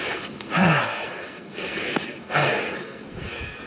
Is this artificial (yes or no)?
yes